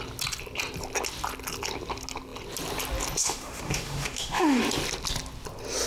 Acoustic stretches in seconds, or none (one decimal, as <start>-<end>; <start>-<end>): 0.0-3.2; 4.6-5.9